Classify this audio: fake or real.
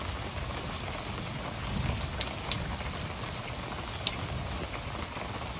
real